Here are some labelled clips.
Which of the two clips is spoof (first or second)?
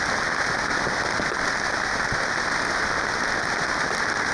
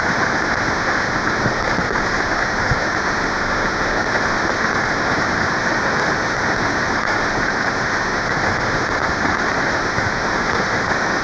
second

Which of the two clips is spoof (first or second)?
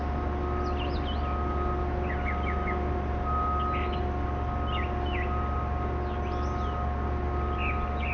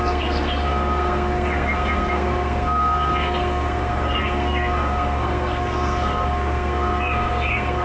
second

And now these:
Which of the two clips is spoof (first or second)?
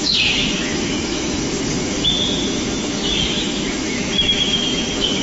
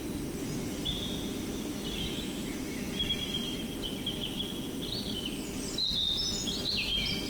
first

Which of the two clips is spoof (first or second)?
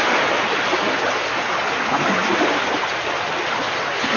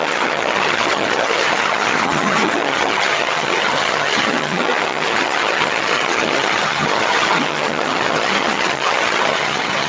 second